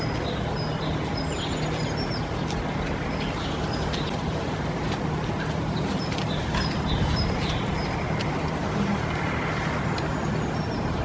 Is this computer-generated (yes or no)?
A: no